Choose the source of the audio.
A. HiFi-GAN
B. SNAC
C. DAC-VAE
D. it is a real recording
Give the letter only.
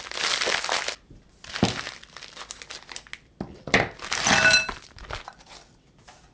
D